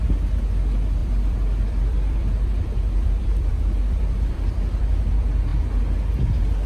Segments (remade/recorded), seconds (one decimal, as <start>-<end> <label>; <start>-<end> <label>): 0.0-1.0 recorded; 1.0-4.9 remade; 4.9-6.7 recorded